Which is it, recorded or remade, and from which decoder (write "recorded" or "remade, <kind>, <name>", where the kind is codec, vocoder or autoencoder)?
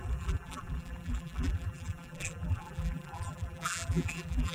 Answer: remade, vocoder, BigVGAN v2